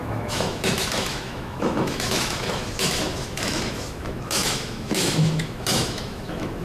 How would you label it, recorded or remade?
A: remade